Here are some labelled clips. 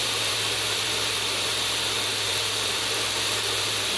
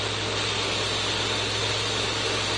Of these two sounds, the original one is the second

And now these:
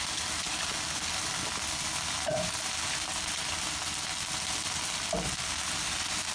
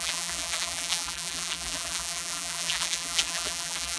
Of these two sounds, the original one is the first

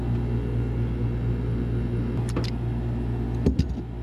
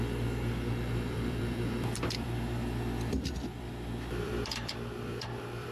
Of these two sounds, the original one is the first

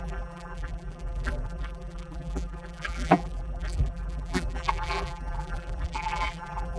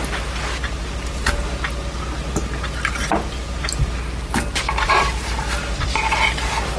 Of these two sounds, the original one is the second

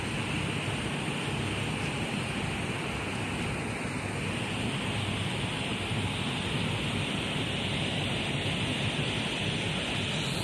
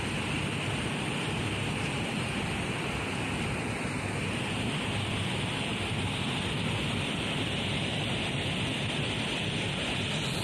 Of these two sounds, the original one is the first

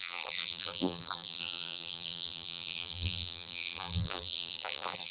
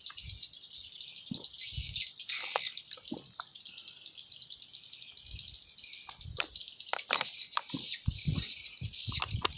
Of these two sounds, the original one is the second